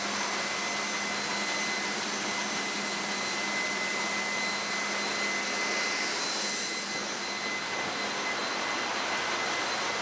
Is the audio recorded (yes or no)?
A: yes